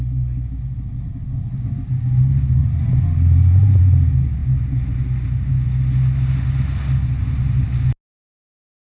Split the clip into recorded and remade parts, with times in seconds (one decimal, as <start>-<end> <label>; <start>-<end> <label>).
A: 0.0-2.6 recorded; 2.6-3.8 remade; 3.8-8.9 recorded